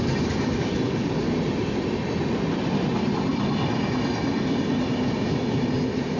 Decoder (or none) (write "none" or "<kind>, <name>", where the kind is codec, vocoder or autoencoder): none